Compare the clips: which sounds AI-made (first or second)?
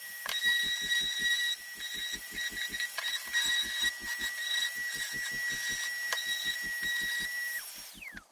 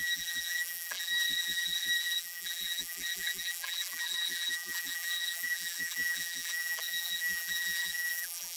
second